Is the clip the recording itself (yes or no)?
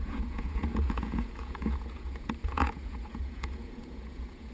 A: no